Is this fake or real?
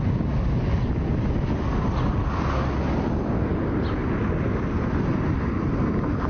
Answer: real